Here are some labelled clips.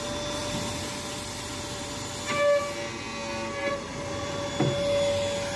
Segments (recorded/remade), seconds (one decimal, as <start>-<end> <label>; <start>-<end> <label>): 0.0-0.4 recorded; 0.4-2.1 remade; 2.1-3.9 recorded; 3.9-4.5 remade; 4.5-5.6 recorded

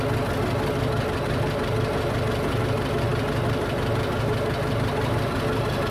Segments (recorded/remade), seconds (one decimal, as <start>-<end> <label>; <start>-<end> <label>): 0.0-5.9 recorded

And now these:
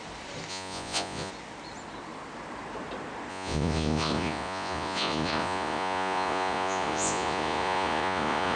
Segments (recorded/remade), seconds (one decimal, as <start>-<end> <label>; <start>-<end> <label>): 0.0-0.5 recorded; 0.5-1.3 remade; 1.3-3.3 recorded; 3.3-8.6 remade

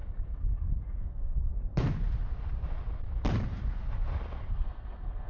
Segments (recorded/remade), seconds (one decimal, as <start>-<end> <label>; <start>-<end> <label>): 0.0-1.0 recorded; 1.0-1.5 remade; 1.5-4.5 recorded; 4.5-5.3 remade